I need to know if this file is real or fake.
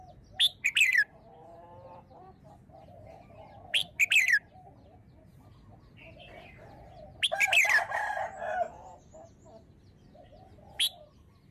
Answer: real